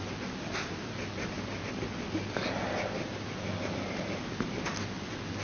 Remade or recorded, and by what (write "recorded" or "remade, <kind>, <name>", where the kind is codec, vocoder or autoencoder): recorded